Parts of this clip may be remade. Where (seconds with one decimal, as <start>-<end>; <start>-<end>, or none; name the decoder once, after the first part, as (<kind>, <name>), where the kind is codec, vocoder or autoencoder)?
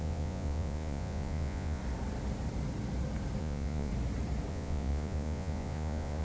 0.0-1.8 (vocoder, Vocos); 3.4-3.9; 4.5-6.2